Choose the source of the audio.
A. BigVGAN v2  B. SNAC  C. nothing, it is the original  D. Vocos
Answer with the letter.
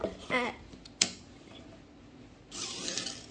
C